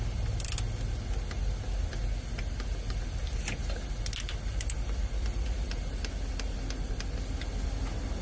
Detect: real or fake real